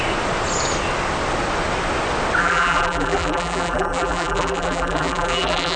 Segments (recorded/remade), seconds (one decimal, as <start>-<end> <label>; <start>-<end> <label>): 0.0-2.4 recorded; 2.4-5.8 remade